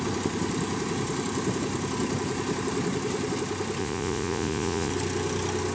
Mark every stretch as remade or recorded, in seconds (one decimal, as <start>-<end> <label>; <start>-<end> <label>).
0.0-3.8 recorded; 3.8-4.9 remade; 4.9-5.7 recorded